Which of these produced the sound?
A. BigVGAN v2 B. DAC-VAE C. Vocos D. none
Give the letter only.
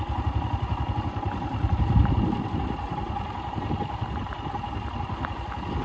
D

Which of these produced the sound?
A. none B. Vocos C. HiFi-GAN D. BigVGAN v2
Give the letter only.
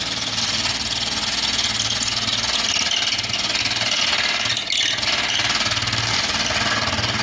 A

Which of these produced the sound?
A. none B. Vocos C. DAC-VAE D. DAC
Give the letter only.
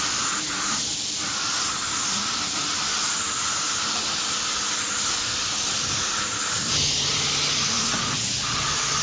A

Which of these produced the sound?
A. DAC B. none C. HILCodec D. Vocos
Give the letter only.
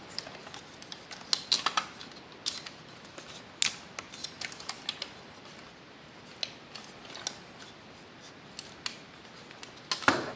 B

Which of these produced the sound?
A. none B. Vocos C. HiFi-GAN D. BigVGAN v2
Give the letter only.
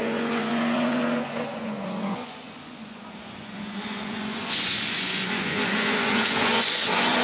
B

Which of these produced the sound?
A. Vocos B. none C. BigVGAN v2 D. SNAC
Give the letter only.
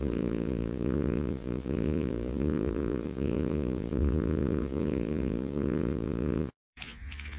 A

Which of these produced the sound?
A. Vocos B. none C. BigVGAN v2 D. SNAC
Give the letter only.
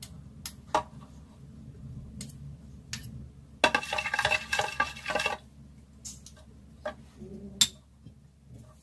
B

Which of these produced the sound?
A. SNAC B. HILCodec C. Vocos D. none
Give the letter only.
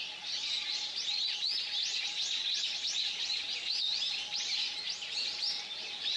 D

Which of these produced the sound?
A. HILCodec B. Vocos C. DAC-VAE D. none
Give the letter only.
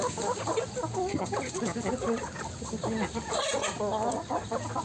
D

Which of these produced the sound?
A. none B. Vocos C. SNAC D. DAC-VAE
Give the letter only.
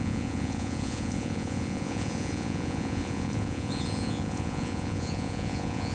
B